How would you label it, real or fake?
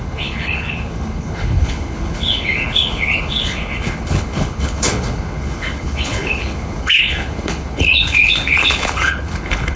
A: fake